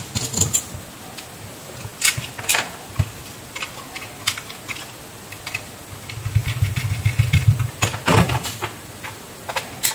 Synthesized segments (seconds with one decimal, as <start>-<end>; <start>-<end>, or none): 6.4-7.8